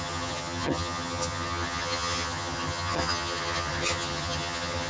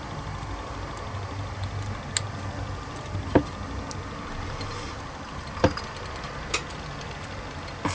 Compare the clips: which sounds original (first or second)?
second